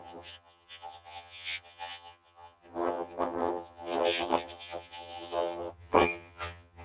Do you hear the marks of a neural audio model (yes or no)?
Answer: yes